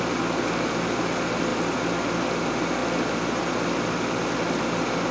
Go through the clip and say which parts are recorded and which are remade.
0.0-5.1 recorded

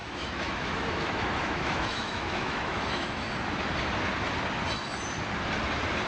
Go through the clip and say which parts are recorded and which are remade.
0.0-3.3 remade; 3.3-6.1 recorded